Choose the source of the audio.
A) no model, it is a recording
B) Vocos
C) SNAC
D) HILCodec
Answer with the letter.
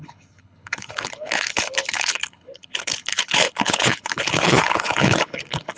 D